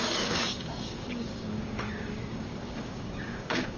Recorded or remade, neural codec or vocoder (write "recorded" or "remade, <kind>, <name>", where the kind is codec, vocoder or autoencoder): remade, codec, DAC